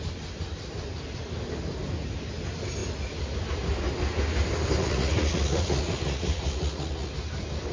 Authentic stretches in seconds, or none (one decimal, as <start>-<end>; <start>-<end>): 0.0-4.8; 7.1-7.7